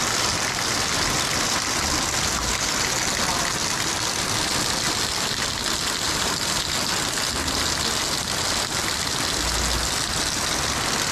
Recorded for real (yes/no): yes